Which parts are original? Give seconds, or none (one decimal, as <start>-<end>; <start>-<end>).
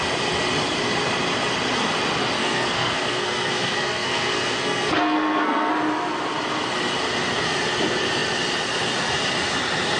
0.0-2.4; 5.7-10.0